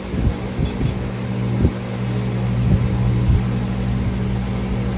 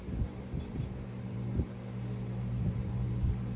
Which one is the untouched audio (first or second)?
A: first